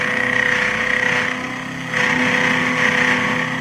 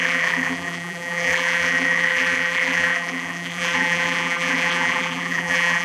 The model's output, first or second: second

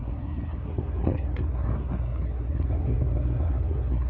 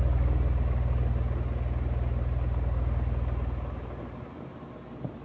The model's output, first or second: first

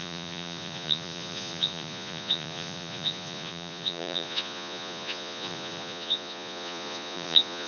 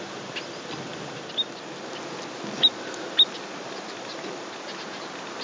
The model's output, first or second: first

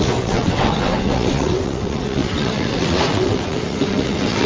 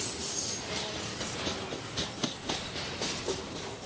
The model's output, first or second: first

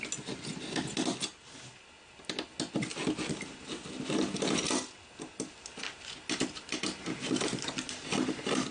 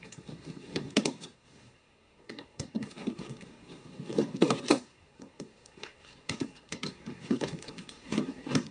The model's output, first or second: second